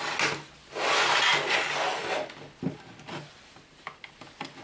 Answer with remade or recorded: recorded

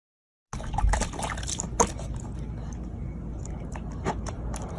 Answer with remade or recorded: recorded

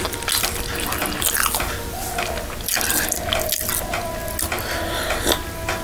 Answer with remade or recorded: recorded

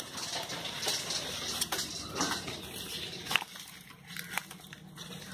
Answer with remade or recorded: recorded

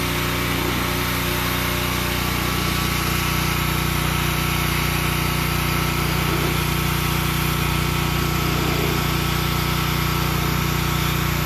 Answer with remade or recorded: recorded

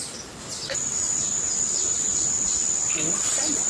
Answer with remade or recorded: recorded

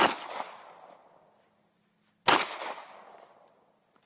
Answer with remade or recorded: recorded